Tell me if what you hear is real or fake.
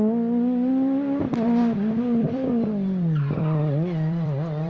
fake